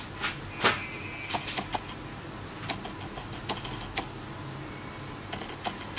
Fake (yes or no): no